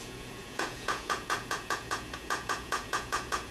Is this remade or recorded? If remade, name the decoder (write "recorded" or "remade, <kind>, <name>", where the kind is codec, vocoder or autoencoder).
remade, vocoder, Vocos